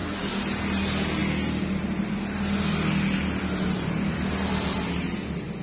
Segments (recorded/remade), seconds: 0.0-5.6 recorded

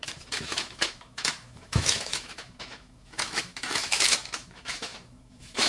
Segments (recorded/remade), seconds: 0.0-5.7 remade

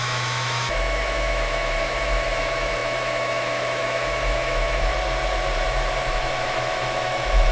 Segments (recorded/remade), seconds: 0.0-4.9 remade; 4.9-6.1 recorded; 6.1-7.5 remade

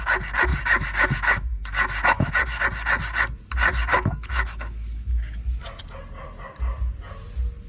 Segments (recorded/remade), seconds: 0.0-0.5 recorded; 0.5-2.6 remade; 2.6-3.9 recorded; 3.9-5.8 remade; 5.8-7.7 recorded

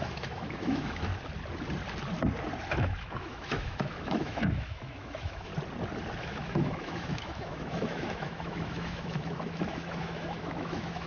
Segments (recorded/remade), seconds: 0.0-1.1 remade; 1.1-2.7 recorded; 2.7-5.5 remade; 5.5-6.2 recorded; 6.2-11.1 remade

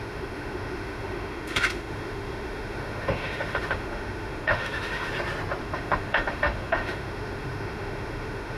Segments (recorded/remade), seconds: 0.0-5.1 remade; 5.1-5.6 recorded; 5.6-8.6 remade